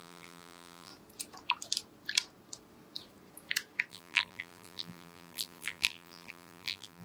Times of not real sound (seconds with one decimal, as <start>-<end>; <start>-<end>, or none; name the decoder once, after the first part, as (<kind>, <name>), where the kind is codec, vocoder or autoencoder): 0.0-0.9 (vocoder, BigVGAN v2); 3.9-7.0